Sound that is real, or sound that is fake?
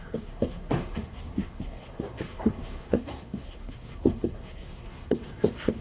fake